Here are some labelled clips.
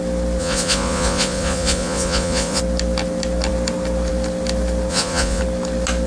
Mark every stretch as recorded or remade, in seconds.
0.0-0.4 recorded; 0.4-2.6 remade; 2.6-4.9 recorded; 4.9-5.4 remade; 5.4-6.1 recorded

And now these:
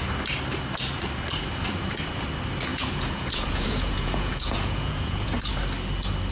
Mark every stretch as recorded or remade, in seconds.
0.0-2.7 recorded; 2.7-5.5 remade; 5.5-6.3 recorded

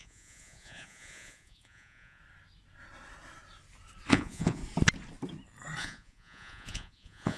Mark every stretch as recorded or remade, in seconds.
0.0-2.2 remade; 2.2-4.1 recorded; 4.1-4.6 remade; 4.6-5.8 recorded; 5.8-7.4 remade

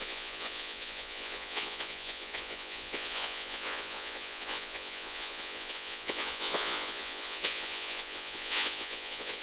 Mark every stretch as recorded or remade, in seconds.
0.0-9.4 remade